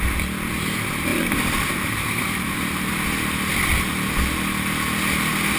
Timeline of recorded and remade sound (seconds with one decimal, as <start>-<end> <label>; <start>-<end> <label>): 0.0-1.1 recorded; 1.1-2.6 remade; 2.6-5.6 recorded